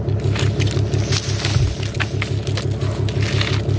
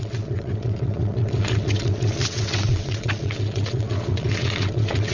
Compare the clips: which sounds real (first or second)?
first